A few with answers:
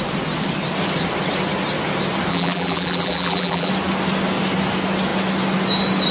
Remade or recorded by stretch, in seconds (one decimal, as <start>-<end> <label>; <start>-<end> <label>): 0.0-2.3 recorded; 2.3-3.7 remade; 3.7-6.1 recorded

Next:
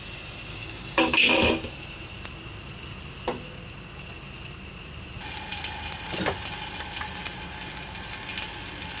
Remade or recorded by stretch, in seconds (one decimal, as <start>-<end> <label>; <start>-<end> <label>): 0.0-0.5 recorded; 0.5-1.3 remade; 1.3-9.0 recorded

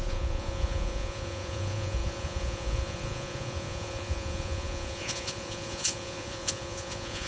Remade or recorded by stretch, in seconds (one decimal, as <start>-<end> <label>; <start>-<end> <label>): 0.0-7.3 remade

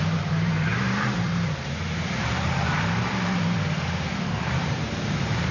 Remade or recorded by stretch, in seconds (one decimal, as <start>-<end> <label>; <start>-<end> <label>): 0.0-5.5 remade

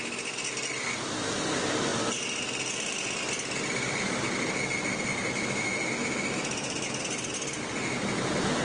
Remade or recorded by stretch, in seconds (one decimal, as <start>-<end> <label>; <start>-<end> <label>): 0.0-5.1 recorded; 5.1-7.0 remade; 7.0-8.6 recorded

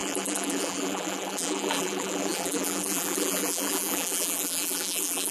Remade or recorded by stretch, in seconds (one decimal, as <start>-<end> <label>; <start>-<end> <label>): 0.0-5.3 remade

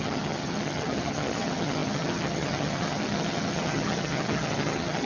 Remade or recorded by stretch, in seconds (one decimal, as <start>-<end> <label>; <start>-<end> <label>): 0.0-5.1 remade

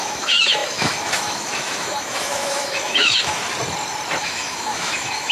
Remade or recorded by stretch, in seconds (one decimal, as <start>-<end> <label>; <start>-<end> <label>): 0.0-3.4 remade; 3.4-4.2 recorded; 4.2-5.3 remade